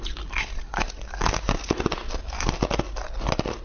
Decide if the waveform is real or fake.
real